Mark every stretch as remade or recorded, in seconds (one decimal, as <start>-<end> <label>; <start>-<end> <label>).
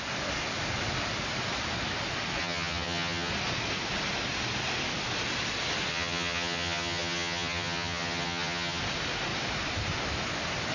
0.0-2.4 recorded; 2.4-3.3 remade; 3.3-5.9 recorded; 5.9-8.8 remade; 8.8-10.7 recorded